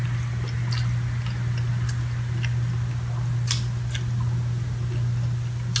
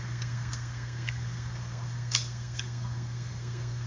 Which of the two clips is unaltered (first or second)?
first